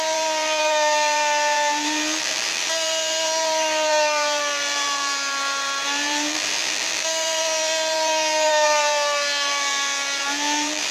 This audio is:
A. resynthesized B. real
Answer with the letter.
A